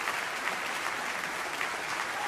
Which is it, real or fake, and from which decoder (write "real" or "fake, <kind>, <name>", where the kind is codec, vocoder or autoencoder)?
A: real